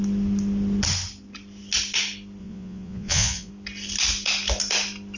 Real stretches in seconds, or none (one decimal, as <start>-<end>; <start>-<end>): 0.0-2.4; 3.5-5.2